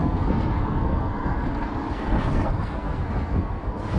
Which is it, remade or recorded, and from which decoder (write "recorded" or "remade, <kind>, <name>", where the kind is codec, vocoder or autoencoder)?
remade, codec, SNAC